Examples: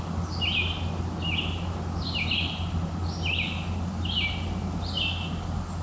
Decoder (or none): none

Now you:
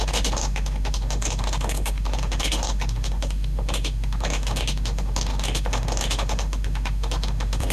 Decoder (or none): autoencoder, DAC-VAE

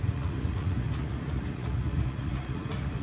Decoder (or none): vocoder, Vocos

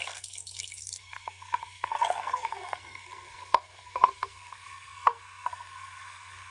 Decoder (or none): codec, SNAC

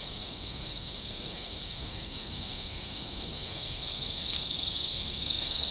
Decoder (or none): codec, SNAC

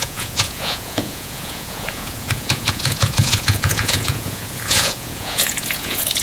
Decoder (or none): vocoder, Vocos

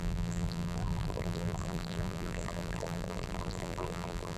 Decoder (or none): vocoder, BigVGAN v2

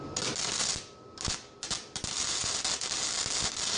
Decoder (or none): none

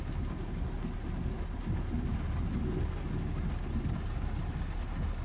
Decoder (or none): none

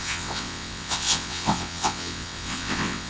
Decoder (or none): vocoder, WaveNeXt